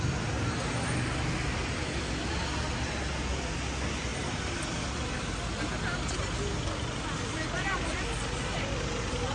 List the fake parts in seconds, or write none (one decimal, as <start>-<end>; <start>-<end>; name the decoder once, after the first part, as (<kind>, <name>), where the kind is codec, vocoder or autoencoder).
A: none